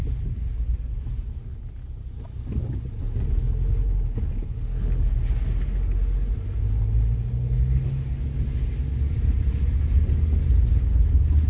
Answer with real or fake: real